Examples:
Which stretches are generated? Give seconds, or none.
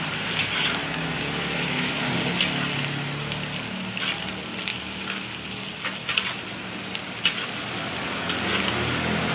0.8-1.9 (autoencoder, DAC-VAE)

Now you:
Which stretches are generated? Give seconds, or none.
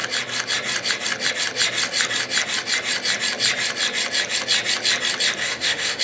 5.4-6.0 (autoencoder, DAC-VAE)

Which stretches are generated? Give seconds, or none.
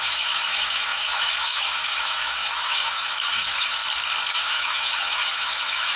0.0-3.8 (autoencoder, DAC-VAE); 4.3-6.0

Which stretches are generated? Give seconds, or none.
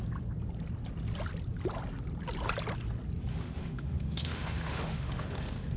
3.3-5.8 (autoencoder, DAC-VAE)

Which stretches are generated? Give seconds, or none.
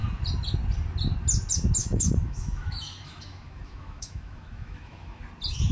1.8-5.2 (autoencoder, DAC-VAE)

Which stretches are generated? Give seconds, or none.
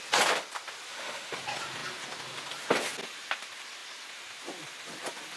0.9-1.4 (autoencoder, DAC-VAE)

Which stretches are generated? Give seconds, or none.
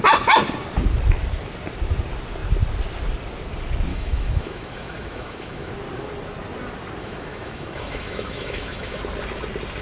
3.9-5.7 (autoencoder, DAC-VAE); 7.0-9.0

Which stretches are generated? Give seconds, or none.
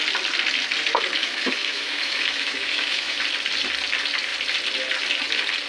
1.2-3.2 (autoencoder, DAC-VAE)